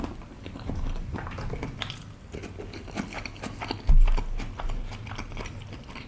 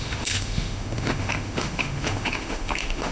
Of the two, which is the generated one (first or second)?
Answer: second